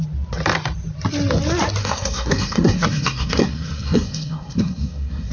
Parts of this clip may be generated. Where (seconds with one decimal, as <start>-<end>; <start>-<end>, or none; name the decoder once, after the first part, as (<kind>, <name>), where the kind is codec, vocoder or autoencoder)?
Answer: 1.8-5.3 (codec, SNAC)